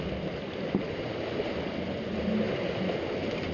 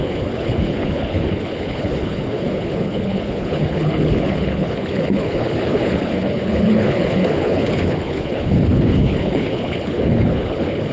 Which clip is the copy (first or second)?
second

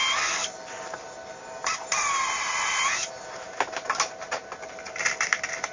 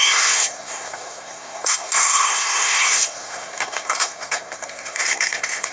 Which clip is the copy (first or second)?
second